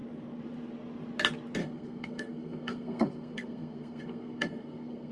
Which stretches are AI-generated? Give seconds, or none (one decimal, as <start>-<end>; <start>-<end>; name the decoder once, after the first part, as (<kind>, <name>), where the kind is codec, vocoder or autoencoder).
1.6-5.1 (codec, SNAC)